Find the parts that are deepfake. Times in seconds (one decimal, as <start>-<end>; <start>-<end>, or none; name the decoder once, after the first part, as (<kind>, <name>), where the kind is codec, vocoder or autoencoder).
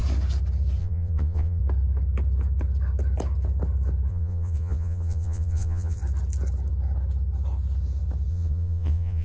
0.8-1.6 (vocoder, Vocos); 4.1-6.0; 8.3-9.2